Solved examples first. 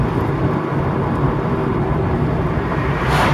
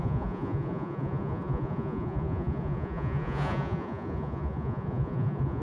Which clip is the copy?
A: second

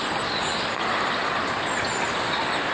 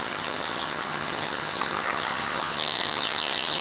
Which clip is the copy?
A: second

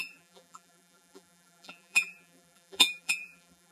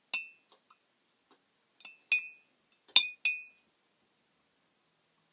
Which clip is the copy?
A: first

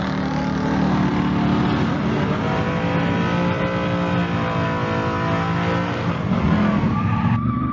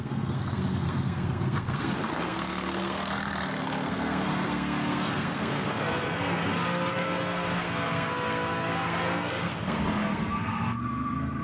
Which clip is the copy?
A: second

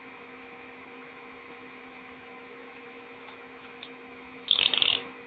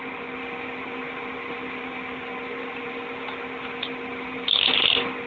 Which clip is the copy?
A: first